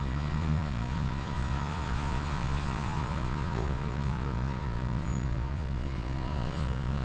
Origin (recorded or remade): remade